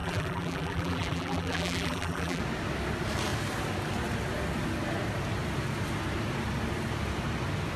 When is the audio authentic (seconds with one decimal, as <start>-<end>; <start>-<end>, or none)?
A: 2.4-7.8